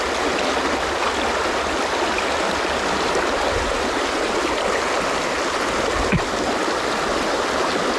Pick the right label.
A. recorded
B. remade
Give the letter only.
A